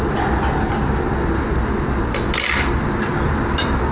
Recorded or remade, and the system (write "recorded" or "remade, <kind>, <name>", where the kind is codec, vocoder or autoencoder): recorded